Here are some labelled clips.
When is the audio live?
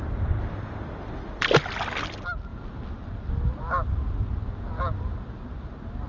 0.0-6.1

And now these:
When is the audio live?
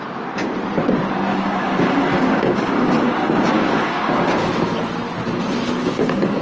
0.0-1.3; 4.5-5.8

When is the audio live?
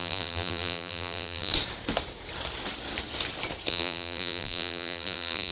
1.5-3.7